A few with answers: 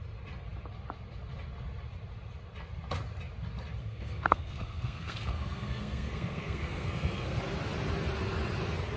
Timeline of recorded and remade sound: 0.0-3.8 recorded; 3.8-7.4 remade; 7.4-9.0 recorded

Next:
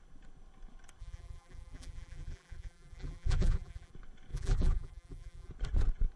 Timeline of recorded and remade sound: 0.0-1.0 recorded; 1.0-3.9 remade; 3.9-4.3 recorded; 4.3-5.5 remade; 5.5-6.2 recorded

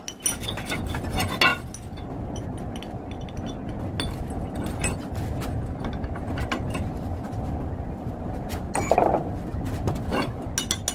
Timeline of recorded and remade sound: 0.0-10.9 recorded